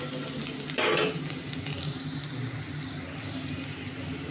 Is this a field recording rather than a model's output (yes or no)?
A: yes